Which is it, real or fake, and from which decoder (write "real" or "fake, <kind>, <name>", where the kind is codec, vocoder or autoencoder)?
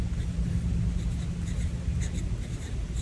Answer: real